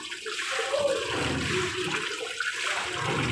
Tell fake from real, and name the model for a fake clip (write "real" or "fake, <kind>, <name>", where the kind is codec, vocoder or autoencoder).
real